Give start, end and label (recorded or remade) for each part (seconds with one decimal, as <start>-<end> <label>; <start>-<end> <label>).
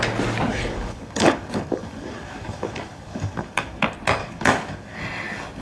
0.0-0.5 recorded; 0.5-3.8 remade; 3.8-4.2 recorded; 4.2-5.0 remade; 5.0-5.6 recorded